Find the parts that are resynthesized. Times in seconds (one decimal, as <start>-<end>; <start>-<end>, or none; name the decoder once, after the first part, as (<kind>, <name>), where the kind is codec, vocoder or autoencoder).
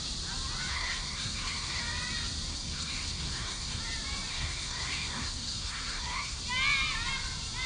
0.7-1.8 (codec, SNAC); 2.5-3.8; 4.3-6.4